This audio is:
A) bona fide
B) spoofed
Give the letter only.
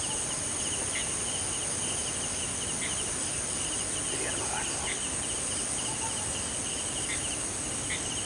A